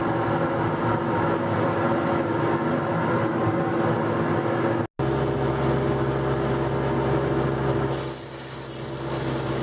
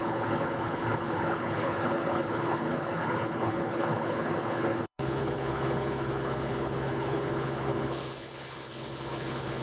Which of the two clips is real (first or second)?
first